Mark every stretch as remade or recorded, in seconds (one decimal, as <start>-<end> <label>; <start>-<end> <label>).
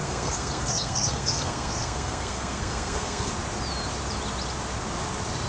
0.0-3.3 remade; 3.3-5.5 recorded